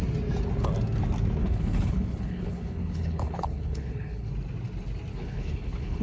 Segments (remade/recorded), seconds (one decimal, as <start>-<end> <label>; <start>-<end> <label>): 0.0-1.4 recorded; 1.4-4.3 remade; 4.3-5.1 recorded; 5.1-6.0 remade